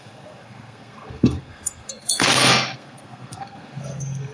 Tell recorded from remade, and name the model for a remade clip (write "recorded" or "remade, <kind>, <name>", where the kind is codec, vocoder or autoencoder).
remade, codec, SNAC